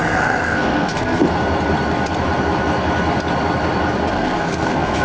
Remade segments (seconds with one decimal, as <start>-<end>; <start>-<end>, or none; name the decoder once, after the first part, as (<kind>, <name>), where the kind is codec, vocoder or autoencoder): 0.0-1.2 (codec, SNAC); 4.1-5.0